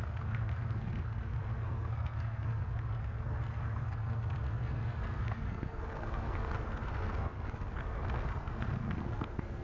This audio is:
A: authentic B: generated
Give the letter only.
B